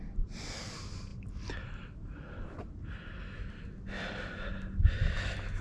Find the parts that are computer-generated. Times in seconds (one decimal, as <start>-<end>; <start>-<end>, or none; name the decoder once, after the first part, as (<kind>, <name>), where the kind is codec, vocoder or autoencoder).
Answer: none